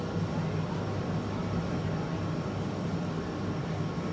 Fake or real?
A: real